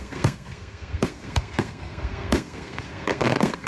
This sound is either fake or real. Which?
fake